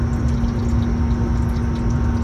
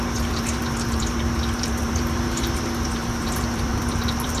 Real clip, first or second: first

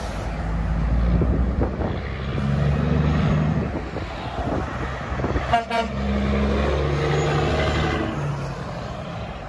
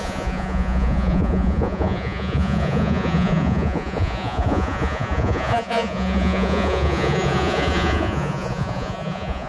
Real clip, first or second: first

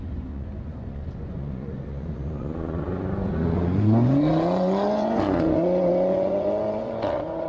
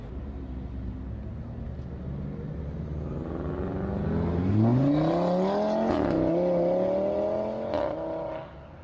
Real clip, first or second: second